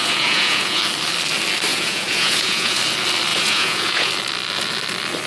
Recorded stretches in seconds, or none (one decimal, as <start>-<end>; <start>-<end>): 0.8-1.7; 2.8-3.3; 4.1-5.3